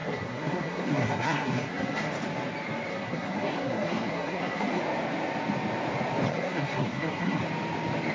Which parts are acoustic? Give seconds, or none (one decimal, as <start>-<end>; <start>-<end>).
2.1-2.9; 4.8-6.3; 7.4-8.1